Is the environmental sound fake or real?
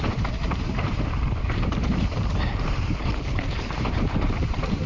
fake